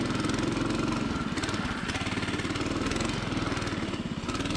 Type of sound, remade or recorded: recorded